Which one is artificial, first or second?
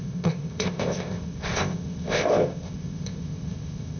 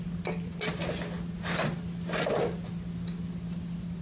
first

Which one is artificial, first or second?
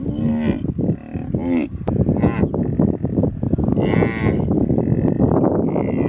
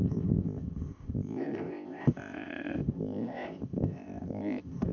second